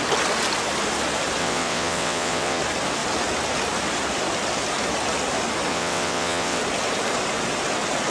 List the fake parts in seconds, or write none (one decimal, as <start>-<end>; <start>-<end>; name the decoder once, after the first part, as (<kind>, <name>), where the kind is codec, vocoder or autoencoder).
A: 1.4-2.6 (vocoder, WaveNeXt); 5.7-6.6